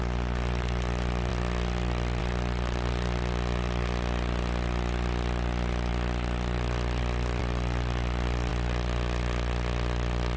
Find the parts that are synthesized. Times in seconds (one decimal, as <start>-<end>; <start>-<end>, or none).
none